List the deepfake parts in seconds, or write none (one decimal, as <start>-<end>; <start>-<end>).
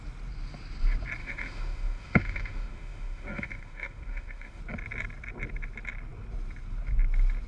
1.2-4.6